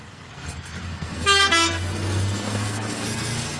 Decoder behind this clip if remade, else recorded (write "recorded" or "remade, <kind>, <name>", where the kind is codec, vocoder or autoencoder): remade, codec, SNAC